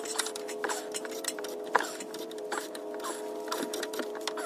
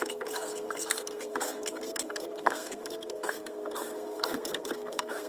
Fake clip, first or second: second